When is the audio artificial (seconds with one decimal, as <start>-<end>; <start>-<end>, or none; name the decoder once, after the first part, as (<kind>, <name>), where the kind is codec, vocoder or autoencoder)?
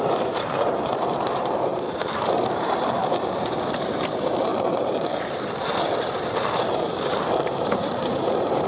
0.0-8.7 (vocoder, BigVGAN v2)